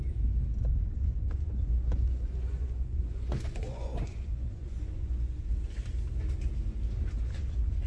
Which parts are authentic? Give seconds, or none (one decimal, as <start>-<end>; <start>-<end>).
0.0-0.7; 5.4-7.9